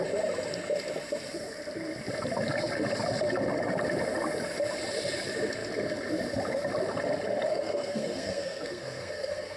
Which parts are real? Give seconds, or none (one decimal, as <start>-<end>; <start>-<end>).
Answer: 0.0-7.5